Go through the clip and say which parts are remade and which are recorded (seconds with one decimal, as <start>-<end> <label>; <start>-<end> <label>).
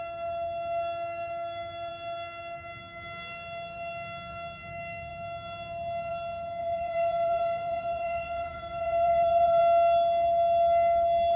0.0-6.6 recorded; 6.6-9.6 remade; 9.6-11.4 recorded